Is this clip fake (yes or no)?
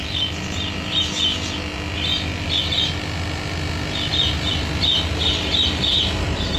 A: no